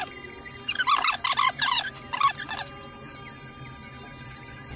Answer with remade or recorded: recorded